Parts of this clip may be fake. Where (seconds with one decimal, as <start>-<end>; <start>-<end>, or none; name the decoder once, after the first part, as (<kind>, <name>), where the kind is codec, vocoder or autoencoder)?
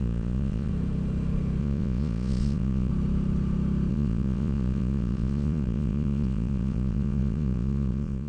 0.0-0.7 (vocoder, Vocos); 1.6-2.9; 3.9-8.3